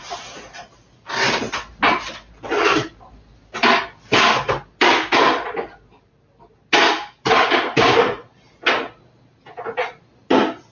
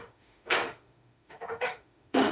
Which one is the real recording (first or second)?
first